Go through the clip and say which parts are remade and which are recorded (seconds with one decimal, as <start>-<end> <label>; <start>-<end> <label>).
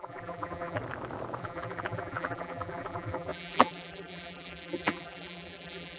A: 0.0-0.8 remade; 0.8-1.4 recorded; 1.4-6.0 remade